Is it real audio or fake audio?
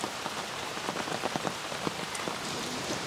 fake